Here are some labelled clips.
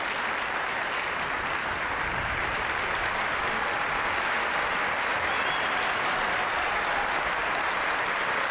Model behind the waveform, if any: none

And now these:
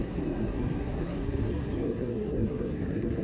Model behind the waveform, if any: codec, SNAC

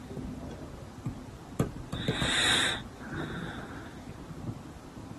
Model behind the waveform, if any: none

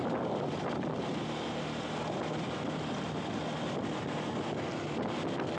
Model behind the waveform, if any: none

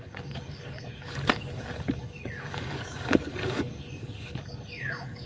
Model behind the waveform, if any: codec, DAC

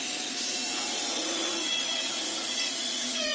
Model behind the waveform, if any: vocoder, Vocos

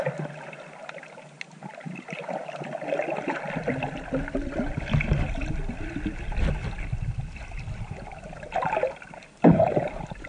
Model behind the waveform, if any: none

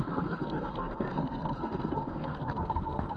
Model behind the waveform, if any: codec, SNAC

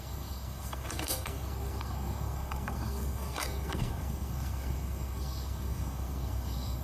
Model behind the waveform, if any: codec, SNAC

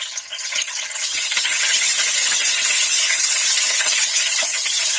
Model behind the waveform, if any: vocoder, HiFi-GAN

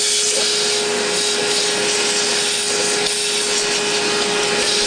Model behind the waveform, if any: none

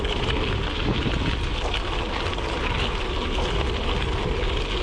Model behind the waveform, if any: none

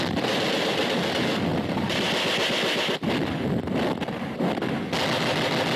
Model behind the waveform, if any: none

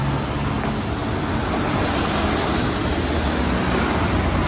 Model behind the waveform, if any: none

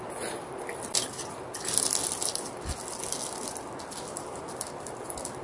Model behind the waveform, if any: none